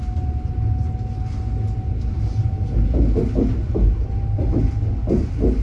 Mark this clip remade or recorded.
recorded